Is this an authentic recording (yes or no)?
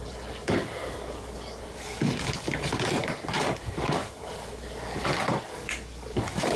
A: no